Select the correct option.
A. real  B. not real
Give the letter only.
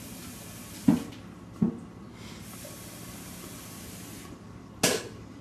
A